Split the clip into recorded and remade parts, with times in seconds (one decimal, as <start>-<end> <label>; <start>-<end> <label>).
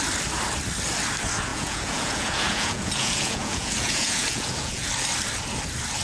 0.0-1.5 recorded; 1.5-4.9 remade; 4.9-6.0 recorded